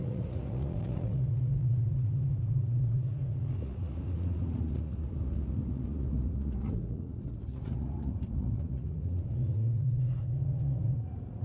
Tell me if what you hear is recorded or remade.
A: remade